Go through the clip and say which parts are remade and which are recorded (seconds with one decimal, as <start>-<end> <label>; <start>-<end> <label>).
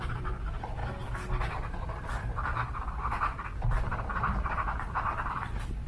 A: 0.0-0.8 remade; 0.8-1.3 recorded; 1.3-5.9 remade